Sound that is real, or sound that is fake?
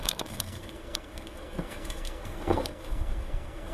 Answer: fake